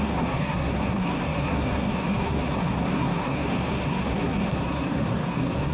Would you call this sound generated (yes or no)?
yes